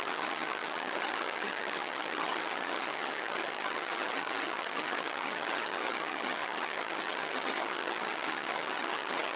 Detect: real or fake fake